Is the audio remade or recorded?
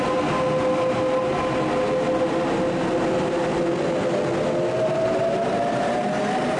recorded